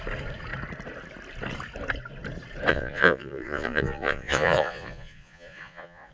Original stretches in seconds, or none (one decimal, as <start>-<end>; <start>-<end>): 0.0-2.7

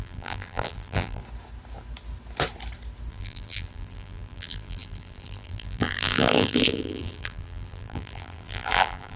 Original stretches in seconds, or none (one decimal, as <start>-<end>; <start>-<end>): 1.2-3.1